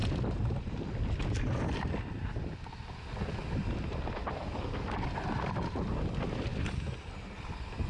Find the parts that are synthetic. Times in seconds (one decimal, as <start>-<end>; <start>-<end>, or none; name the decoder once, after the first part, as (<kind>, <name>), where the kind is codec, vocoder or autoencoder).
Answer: none